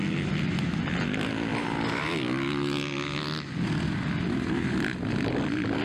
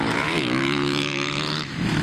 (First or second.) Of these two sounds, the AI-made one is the second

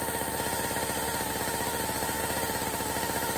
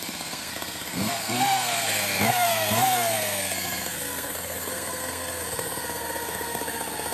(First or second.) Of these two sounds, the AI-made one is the second